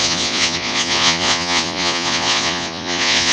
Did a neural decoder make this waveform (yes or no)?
yes